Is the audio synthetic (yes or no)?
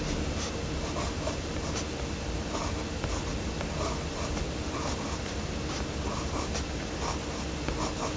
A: no